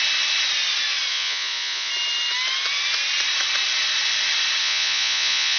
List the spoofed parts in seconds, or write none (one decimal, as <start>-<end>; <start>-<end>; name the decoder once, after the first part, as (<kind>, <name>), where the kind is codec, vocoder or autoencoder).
1.1-1.9 (vocoder, Vocos); 4.6-5.6